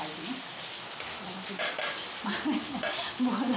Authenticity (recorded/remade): recorded